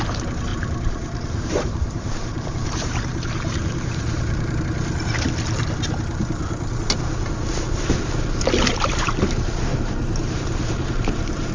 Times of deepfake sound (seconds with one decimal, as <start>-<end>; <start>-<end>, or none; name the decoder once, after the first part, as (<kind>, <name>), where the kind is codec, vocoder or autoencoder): 0.5-4.6 (vocoder, BigVGAN v2); 6.1-6.7; 9.7-11.5